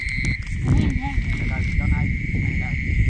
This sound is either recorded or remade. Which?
recorded